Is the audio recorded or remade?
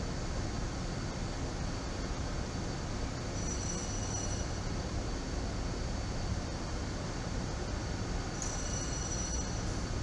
recorded